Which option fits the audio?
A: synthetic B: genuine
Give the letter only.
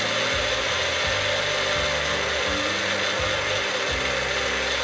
B